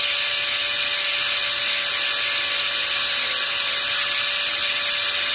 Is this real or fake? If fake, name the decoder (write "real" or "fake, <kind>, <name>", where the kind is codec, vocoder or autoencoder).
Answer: real